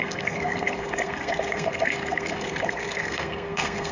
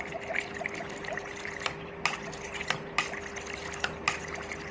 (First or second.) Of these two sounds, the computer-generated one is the first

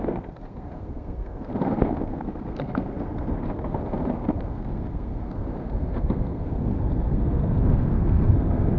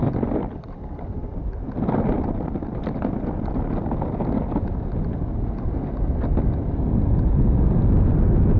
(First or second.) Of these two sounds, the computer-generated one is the first